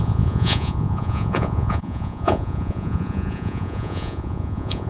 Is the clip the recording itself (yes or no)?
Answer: no